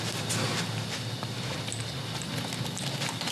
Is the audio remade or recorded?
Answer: recorded